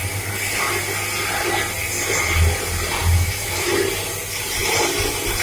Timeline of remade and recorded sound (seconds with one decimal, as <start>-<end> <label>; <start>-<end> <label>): 0.0-3.0 recorded; 3.0-3.7 remade; 3.7-5.4 recorded